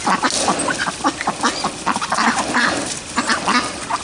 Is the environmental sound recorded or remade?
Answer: recorded